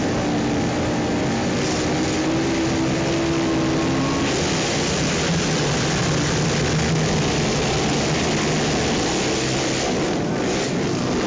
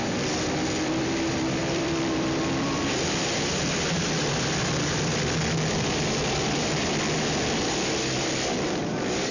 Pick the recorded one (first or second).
first